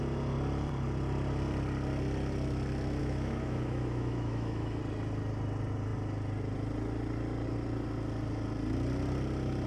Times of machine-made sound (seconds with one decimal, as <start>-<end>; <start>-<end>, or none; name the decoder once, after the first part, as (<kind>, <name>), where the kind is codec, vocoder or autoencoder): 3.0-4.8 (autoencoder, DAC-VAE)